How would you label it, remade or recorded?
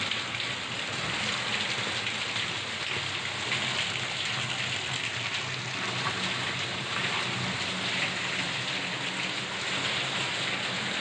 recorded